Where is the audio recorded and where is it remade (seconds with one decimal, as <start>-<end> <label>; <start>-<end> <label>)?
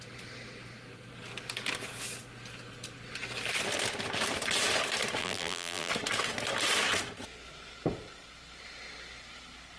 0.0-5.2 recorded; 5.2-5.9 remade; 5.9-9.8 recorded